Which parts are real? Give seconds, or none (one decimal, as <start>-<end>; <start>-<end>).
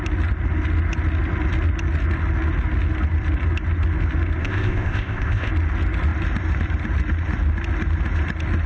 0.0-4.4; 5.5-8.7